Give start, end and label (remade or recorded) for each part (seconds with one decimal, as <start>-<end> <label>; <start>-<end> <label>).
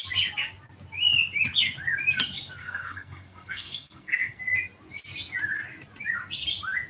0.0-2.6 recorded; 2.6-4.4 remade; 4.4-6.9 recorded